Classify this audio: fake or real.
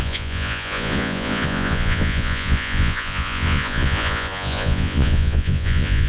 fake